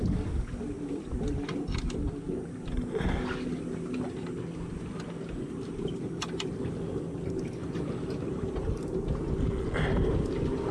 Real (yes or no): yes